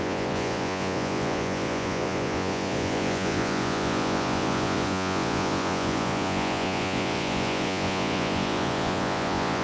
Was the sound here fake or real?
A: fake